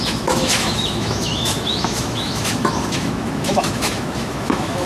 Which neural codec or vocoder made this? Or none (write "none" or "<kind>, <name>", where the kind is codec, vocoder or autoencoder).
autoencoder, DAC-VAE